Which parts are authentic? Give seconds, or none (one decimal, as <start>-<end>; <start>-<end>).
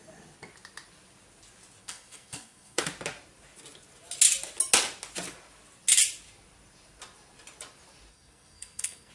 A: 0.0-1.8; 2.9-8.1